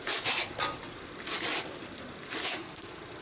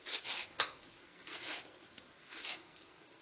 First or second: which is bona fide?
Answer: first